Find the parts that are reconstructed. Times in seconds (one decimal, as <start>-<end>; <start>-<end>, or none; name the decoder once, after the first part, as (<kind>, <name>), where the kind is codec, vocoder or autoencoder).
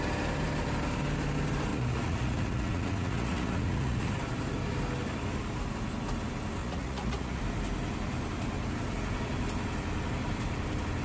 1.7-4.1 (vocoder, Vocos); 6.6-7.4